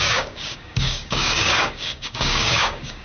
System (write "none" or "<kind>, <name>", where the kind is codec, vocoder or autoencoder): codec, DAC